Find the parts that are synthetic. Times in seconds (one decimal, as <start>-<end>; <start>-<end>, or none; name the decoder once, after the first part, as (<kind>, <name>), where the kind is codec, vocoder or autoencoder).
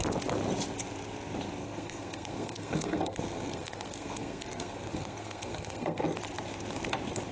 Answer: 1.6-6.0 (codec, SNAC)